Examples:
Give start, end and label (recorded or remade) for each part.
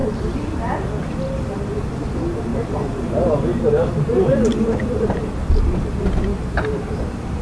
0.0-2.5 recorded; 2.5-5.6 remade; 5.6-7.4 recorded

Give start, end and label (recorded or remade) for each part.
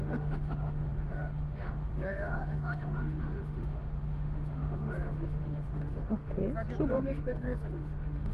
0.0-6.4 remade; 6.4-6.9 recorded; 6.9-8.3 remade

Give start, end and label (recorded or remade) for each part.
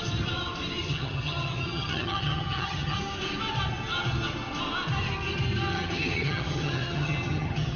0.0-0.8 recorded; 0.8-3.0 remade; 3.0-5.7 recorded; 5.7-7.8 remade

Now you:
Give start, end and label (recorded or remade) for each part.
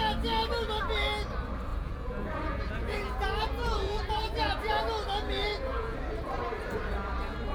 0.0-1.7 recorded; 1.7-4.8 remade; 4.8-5.4 recorded; 5.4-6.0 remade; 6.0-7.5 recorded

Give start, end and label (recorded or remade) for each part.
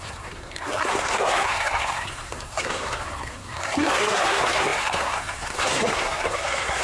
0.0-6.8 remade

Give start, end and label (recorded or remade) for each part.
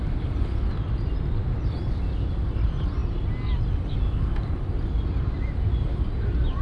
0.0-6.6 recorded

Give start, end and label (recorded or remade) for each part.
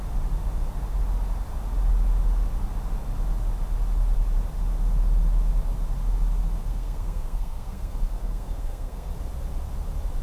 0.0-6.6 recorded; 6.6-9.1 remade; 9.1-10.2 recorded